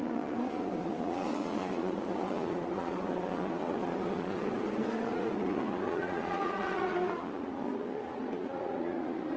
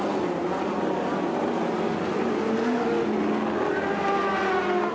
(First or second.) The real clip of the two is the second